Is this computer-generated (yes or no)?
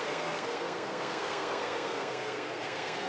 yes